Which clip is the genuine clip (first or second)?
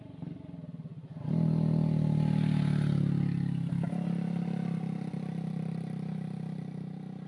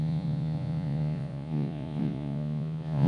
first